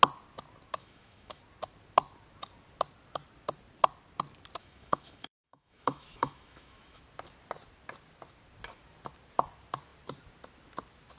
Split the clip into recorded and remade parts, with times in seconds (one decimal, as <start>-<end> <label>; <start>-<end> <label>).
0.0-0.8 recorded; 0.8-1.4 remade; 1.4-4.6 recorded; 4.6-7.0 remade; 7.0-11.2 recorded